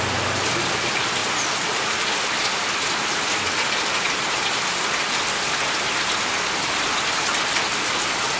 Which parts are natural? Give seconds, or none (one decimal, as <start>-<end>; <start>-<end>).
0.0-8.4